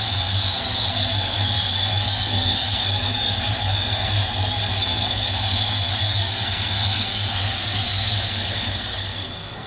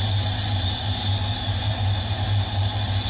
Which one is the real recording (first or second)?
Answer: second